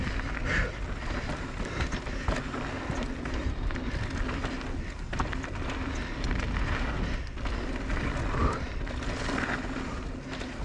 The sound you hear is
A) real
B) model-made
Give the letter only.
A